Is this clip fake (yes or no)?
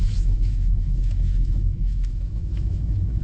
yes